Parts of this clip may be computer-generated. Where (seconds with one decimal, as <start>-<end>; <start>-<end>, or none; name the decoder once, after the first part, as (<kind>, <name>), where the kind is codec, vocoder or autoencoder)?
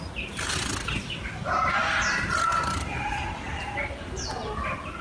none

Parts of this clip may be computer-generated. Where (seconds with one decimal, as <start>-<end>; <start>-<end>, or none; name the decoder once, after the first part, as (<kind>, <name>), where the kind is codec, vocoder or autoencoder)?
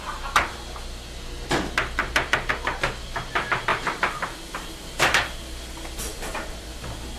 2.0-2.5 (vocoder, BigVGAN v2); 3.7-4.7; 6.1-6.7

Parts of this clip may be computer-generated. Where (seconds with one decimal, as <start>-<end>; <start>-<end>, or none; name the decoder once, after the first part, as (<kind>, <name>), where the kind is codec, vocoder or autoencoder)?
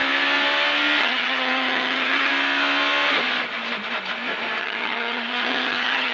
1.0-2.3 (vocoder, HiFi-GAN); 4.6-6.1